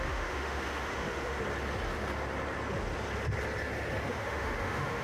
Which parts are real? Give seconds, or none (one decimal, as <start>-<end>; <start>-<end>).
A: 1.4-4.1